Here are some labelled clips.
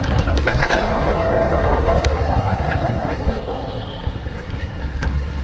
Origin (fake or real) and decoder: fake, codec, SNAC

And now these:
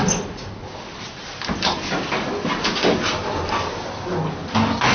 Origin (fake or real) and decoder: real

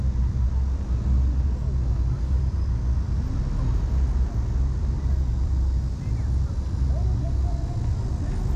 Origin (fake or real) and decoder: real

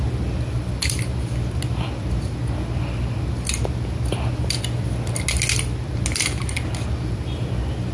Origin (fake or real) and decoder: real